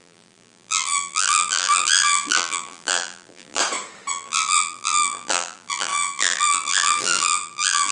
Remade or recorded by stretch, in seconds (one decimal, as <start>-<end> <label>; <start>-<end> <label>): 0.0-3.6 remade; 3.6-4.1 recorded; 4.1-7.9 remade